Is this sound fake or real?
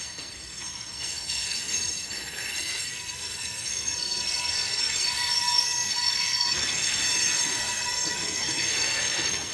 fake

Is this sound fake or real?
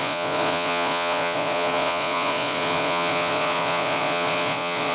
fake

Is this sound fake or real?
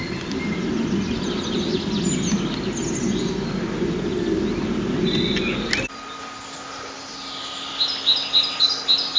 real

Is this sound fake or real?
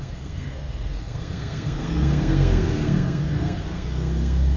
fake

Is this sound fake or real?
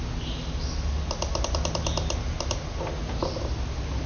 real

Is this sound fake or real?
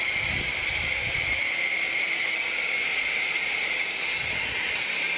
real